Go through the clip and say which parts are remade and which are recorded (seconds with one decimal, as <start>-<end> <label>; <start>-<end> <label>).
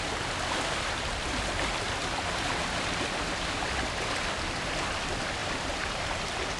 0.0-5.4 recorded; 5.4-5.9 remade; 5.9-6.6 recorded